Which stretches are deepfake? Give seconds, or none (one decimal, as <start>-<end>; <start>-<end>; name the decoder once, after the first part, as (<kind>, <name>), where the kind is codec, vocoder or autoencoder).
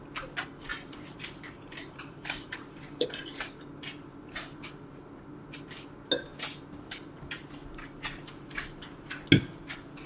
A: 0.7-3.2 (vocoder, BigVGAN v2)